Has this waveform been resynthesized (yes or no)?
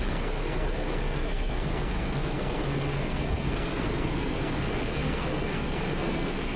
yes